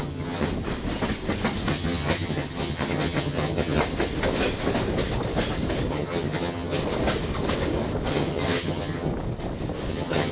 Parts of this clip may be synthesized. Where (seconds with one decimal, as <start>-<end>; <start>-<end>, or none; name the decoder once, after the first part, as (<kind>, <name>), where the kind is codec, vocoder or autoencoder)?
0.0-0.5 (vocoder, HiFi-GAN); 1.7-3.8; 5.9-6.8; 8.1-9.1; 9.9-10.3